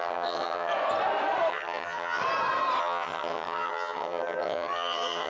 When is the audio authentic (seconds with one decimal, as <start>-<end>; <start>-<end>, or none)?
0.7-1.5; 2.2-2.8